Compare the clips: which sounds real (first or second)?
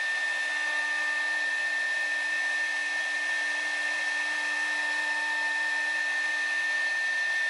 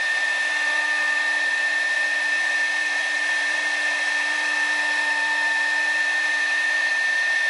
first